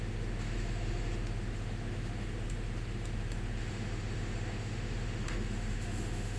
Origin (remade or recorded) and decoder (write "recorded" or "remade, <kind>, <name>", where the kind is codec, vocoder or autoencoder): remade, autoencoder, DAC-VAE